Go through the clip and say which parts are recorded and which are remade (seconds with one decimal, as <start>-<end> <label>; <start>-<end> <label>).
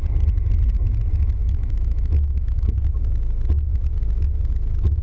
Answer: 0.0-1.4 recorded; 1.4-2.9 remade; 2.9-5.0 recorded